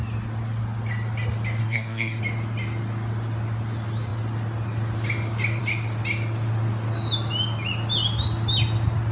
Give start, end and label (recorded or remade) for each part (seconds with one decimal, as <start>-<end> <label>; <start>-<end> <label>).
0.0-1.6 recorded; 1.6-2.2 remade; 2.2-9.1 recorded